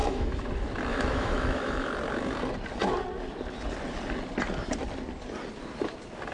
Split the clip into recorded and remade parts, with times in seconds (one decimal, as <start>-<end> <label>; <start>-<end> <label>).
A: 0.0-0.5 remade; 0.5-0.9 recorded; 0.9-1.9 remade; 1.9-6.3 recorded